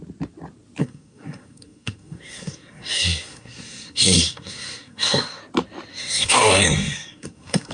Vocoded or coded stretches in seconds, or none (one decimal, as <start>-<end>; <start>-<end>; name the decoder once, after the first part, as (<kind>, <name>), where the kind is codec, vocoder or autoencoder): 0.8-5.4 (codec, SNAC); 5.9-7.7